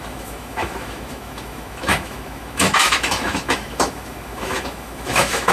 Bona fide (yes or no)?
no